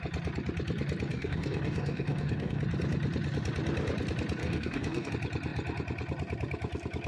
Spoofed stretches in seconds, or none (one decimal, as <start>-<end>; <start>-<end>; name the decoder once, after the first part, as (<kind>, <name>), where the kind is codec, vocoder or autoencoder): 1.1-2.6 (codec, DAC); 4.4-5.1